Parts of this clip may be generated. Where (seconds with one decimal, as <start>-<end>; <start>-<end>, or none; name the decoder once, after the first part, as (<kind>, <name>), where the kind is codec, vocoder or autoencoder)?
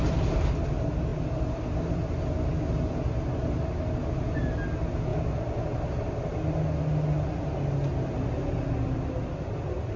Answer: none